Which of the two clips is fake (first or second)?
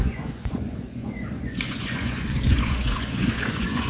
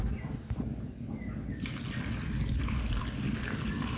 first